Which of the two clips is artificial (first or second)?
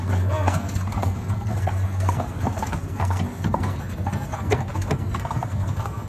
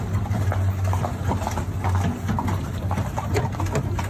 first